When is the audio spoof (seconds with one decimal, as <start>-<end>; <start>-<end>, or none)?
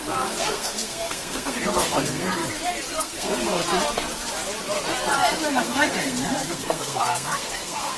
0.0-2.4; 3.0-3.6; 5.5-8.0